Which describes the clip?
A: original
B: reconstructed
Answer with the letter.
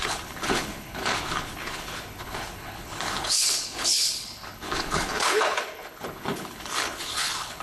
B